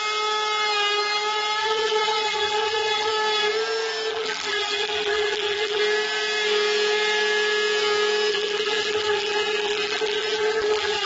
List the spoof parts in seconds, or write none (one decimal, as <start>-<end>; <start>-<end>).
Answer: 1.6-3.1; 4.1-5.8; 8.3-11.1